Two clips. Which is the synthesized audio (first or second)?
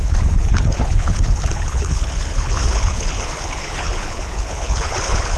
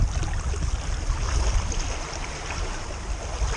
first